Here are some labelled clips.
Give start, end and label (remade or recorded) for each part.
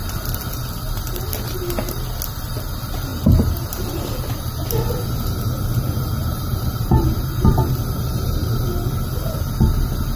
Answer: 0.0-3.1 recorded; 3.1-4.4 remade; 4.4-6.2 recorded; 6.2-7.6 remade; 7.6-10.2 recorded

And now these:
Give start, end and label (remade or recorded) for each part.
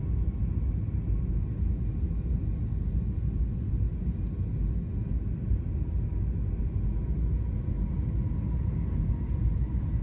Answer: 0.0-10.0 recorded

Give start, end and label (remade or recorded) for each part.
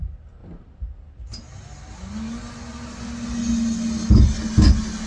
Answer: 0.0-5.1 recorded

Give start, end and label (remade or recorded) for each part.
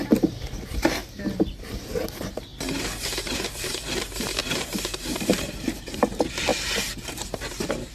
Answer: 0.0-1.0 remade; 1.0-1.6 recorded; 1.6-2.5 remade; 2.5-3.0 recorded; 3.0-6.5 remade; 6.5-7.1 recorded; 7.1-7.9 remade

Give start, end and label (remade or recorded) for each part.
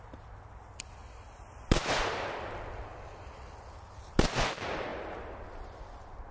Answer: 0.0-1.0 remade; 1.0-1.5 recorded; 1.5-4.9 remade; 4.9-5.5 recorded; 5.5-6.3 remade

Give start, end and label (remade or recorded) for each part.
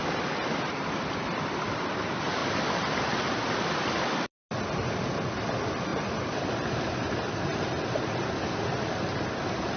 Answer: 0.0-1.9 remade; 1.9-2.4 recorded; 2.4-3.7 remade; 3.7-5.9 recorded; 5.9-6.5 remade; 6.5-9.8 recorded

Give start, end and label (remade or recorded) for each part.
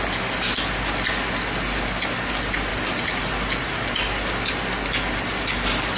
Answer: 0.0-2.7 recorded; 2.7-3.3 remade; 3.3-6.0 recorded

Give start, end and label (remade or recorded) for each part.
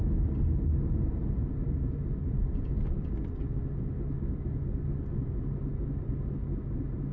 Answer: 0.0-7.1 recorded